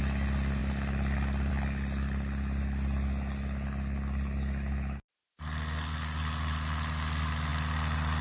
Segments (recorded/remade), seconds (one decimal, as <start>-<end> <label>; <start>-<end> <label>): 0.0-8.2 recorded